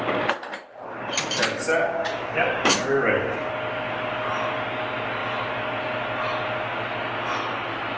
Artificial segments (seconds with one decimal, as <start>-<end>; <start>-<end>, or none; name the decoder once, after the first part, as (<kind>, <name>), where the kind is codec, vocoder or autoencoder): 1.7-3.5 (codec, DAC)

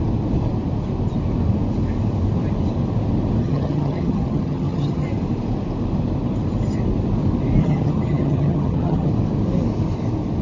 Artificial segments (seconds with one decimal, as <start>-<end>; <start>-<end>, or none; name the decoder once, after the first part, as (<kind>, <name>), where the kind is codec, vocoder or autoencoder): 3.4-5.1 (vocoder, HiFi-GAN); 7.6-9.1

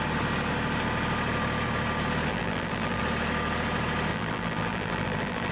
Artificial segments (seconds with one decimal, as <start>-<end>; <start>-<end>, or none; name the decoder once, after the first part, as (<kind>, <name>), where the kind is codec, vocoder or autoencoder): 2.3-3.0 (vocoder, BigVGAN v2); 4.1-5.5

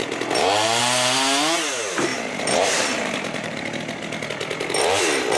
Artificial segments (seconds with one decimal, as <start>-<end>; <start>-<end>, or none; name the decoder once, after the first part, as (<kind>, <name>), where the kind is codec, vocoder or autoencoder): 2.1-3.8 (vocoder, BigVGAN v2)